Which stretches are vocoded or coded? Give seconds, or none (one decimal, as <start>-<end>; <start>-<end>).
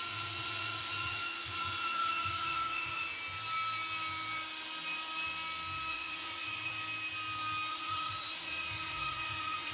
0.0-3.1; 5.9-6.7; 7.7-9.7